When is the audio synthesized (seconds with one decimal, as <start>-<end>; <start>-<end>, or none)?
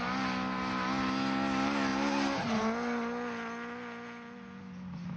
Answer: none